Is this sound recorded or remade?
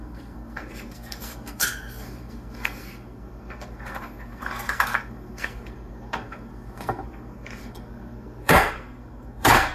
remade